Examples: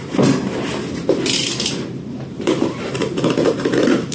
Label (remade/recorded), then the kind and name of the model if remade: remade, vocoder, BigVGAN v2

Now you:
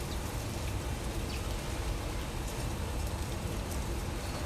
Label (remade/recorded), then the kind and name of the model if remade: remade, vocoder, BigVGAN v2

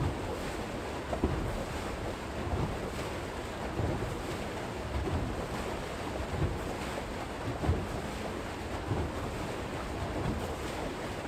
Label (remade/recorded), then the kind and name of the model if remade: recorded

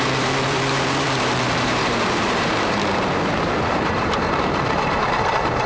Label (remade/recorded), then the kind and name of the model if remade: remade, vocoder, BigVGAN v2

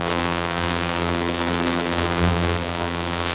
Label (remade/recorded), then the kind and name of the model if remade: remade, vocoder, BigVGAN v2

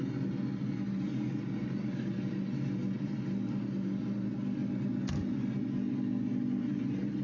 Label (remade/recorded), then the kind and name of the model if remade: recorded